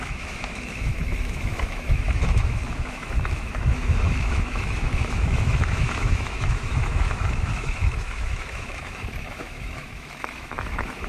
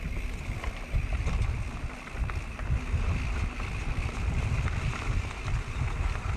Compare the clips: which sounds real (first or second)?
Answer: second